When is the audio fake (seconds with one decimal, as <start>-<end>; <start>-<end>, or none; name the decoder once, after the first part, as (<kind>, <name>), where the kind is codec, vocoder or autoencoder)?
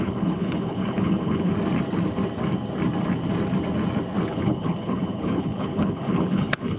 0.0-1.5 (codec, HILCodec); 4.3-6.8